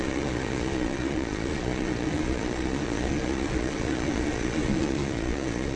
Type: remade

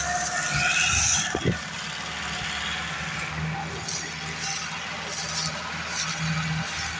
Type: recorded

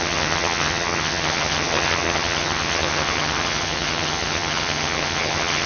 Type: remade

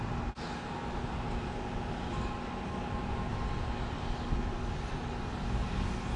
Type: recorded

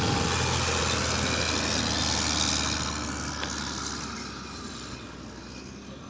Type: recorded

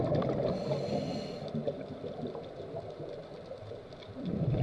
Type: recorded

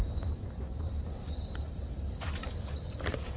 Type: remade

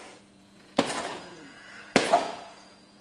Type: remade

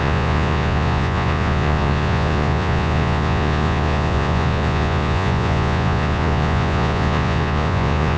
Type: remade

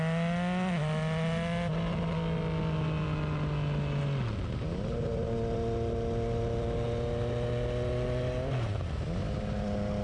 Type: recorded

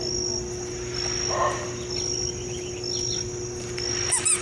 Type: recorded